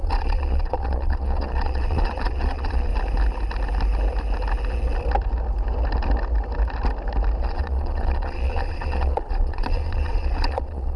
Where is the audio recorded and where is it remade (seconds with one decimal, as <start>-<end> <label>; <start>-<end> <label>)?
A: 0.0-2.9 remade; 2.9-7.4 recorded; 7.4-11.0 remade